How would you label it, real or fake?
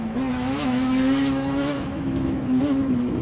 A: fake